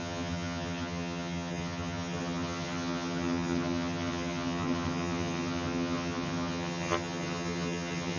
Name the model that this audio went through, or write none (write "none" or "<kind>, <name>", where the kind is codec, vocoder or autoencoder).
vocoder, HiFi-GAN